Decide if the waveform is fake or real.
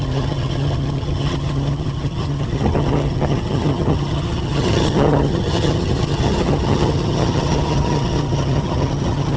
fake